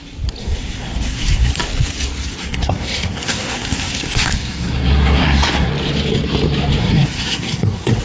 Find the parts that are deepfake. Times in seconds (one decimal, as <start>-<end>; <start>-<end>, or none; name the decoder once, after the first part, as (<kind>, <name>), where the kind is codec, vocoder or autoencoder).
0.4-1.5 (codec, SNAC); 2.4-5.7; 6.8-8.0